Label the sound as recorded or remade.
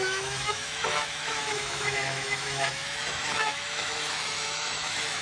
remade